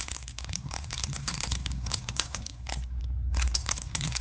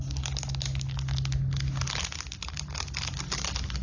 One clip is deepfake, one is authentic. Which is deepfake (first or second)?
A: first